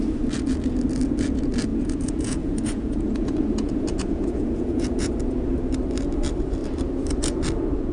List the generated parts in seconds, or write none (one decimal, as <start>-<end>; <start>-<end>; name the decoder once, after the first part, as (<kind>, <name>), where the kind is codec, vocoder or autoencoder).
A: 1.7-5.1 (vocoder, Vocos)